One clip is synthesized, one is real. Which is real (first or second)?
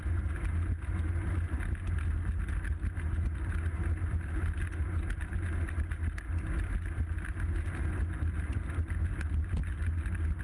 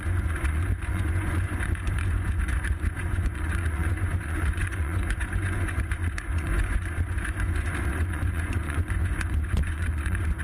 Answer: first